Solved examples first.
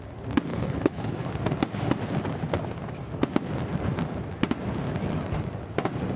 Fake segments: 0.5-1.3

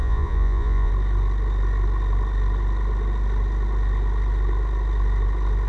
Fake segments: 0.0-0.9